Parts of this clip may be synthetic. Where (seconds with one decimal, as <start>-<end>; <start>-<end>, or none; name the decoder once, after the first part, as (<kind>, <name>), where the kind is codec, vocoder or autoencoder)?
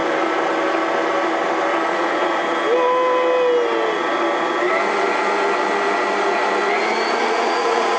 1.9-2.4 (vocoder, Vocos); 7.2-8.0